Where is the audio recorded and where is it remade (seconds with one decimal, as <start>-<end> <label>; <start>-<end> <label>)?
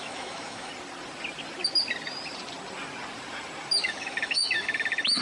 0.0-0.7 remade; 0.7-3.8 recorded; 3.8-5.2 remade